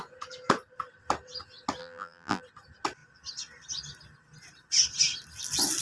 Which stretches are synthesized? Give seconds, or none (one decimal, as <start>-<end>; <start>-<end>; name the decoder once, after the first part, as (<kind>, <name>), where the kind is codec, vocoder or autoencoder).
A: 1.8-2.4 (vocoder, BigVGAN v2)

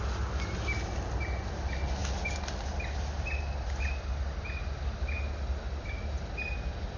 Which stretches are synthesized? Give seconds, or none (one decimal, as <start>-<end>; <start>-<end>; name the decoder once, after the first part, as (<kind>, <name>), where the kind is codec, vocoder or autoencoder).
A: none

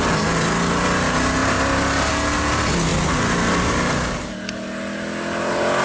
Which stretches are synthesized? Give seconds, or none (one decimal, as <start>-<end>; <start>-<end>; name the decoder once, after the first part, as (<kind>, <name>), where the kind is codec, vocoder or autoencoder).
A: 1.4-2.1 (vocoder, BigVGAN v2)

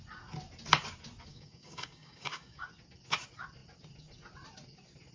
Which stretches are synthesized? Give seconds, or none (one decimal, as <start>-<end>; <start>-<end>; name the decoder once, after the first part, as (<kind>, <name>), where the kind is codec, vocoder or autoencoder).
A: 1.3-2.7 (codec, DAC)

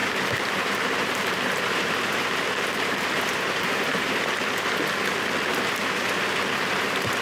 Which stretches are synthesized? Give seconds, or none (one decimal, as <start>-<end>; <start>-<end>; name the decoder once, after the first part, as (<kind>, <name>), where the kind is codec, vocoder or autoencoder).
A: 0.0-4.3 (vocoder, BigVGAN v2); 5.5-7.2

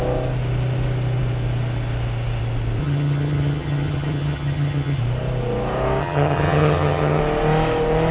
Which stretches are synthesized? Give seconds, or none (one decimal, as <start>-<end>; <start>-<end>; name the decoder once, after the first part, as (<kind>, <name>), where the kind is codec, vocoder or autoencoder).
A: 2.8-5.0 (vocoder, HiFi-GAN); 6.0-7.2

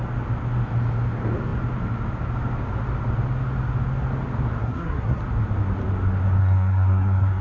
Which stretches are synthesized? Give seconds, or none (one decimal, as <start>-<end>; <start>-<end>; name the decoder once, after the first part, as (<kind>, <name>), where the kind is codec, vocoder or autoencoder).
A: 4.6-5.2 (codec, SNAC); 6.4-7.4

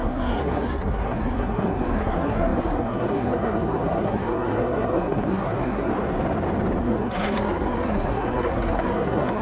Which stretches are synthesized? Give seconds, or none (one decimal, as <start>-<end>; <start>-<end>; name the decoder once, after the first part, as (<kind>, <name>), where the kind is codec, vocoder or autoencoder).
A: 0.0-5.9 (codec, SNAC); 6.8-9.4